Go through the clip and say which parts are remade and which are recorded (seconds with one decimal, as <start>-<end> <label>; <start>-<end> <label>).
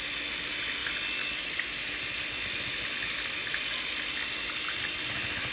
0.0-5.5 recorded